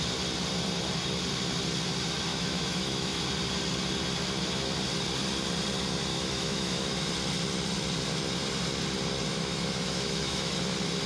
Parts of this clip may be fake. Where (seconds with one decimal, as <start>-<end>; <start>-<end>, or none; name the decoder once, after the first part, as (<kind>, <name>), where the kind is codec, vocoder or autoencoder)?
2.3-3.2 (autoencoder, DAC-VAE); 6.1-7.1; 9.3-10.5